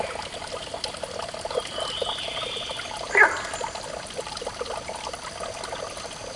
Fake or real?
real